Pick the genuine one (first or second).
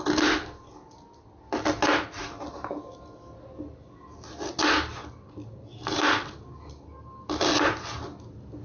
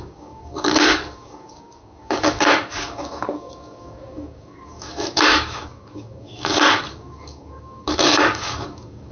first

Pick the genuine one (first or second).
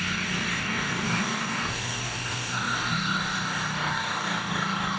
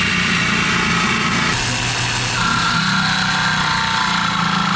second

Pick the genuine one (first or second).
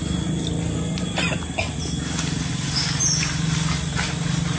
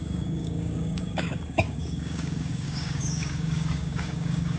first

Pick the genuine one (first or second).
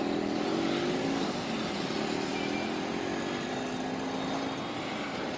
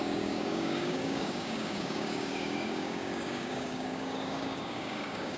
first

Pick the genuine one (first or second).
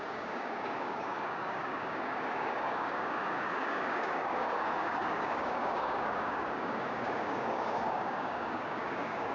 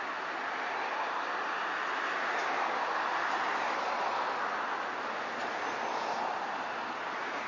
second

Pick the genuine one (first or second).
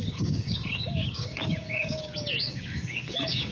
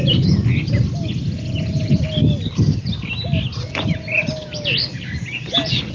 second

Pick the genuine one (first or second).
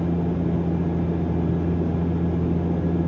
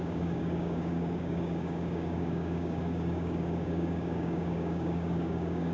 first